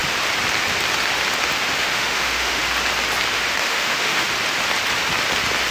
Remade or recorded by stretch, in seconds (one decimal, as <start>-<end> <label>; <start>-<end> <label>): 0.0-1.8 recorded; 1.8-2.6 remade; 2.6-3.6 recorded; 3.6-4.3 remade; 4.3-5.7 recorded